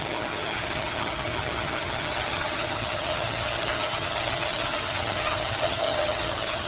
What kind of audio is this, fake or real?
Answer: fake